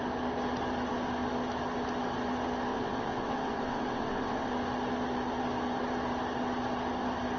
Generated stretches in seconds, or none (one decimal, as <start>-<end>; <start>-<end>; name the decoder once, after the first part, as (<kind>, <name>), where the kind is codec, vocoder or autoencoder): 2.7-4.5 (vocoder, WaveNeXt)